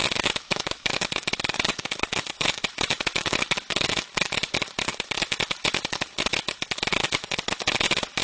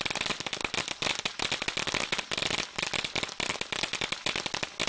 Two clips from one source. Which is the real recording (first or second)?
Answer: second